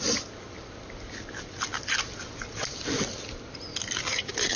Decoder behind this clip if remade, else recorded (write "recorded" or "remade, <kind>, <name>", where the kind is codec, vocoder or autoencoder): recorded